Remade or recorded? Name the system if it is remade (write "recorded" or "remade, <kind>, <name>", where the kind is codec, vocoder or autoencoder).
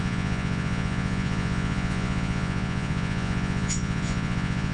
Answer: remade, vocoder, Vocos